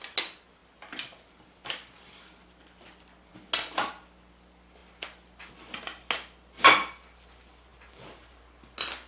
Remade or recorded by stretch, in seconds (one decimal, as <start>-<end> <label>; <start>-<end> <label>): 0.0-7.7 recorded; 7.7-8.4 remade; 8.4-9.1 recorded